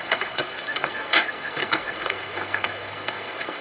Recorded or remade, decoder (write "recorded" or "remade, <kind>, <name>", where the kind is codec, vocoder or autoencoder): remade, codec, SNAC